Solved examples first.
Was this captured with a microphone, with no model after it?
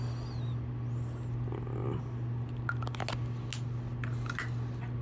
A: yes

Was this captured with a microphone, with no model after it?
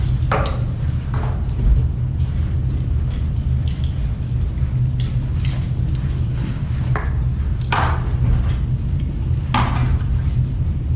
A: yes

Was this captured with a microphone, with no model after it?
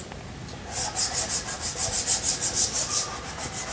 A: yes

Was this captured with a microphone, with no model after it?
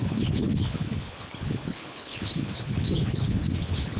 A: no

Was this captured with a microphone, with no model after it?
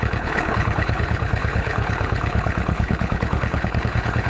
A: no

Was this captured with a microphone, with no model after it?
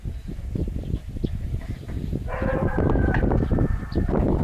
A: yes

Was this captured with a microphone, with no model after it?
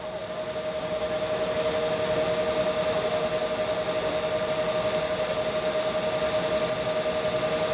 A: yes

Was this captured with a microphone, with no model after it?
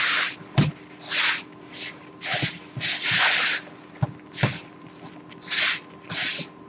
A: yes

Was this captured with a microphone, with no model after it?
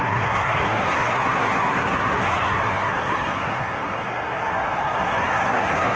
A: no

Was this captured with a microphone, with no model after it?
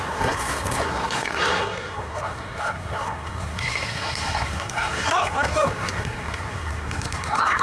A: no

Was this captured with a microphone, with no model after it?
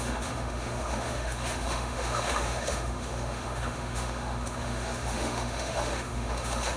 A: no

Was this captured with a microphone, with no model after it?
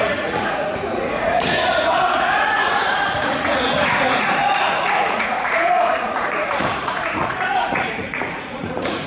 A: no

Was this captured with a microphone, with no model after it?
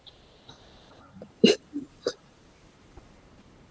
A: no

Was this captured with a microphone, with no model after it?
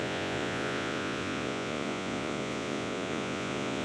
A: no